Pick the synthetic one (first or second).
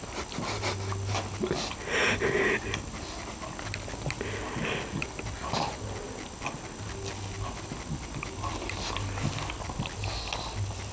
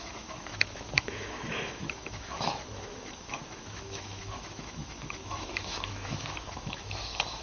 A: second